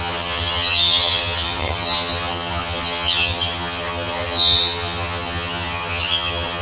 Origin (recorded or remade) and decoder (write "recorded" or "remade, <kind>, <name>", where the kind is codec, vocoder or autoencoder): remade, vocoder, HiFi-GAN